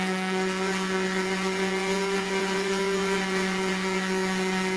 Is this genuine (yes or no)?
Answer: no